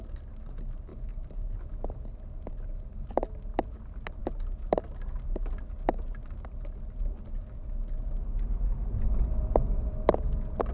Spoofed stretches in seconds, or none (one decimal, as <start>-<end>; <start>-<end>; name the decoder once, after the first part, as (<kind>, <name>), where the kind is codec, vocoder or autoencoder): none